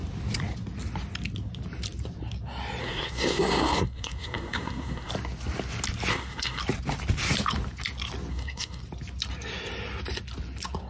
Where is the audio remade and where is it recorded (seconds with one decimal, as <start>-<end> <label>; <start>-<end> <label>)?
0.0-2.8 recorded; 2.8-5.1 remade; 5.1-6.1 recorded; 6.1-6.6 remade; 6.6-8.3 recorded; 8.3-8.8 remade; 8.8-10.9 recorded